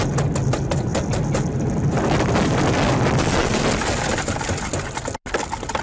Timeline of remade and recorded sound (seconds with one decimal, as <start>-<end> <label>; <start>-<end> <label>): 0.0-5.8 recorded